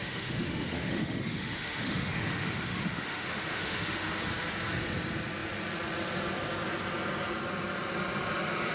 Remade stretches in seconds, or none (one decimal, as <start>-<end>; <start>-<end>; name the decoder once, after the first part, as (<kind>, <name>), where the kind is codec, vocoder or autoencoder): 0.0-4.2 (autoencoder, DAC-VAE)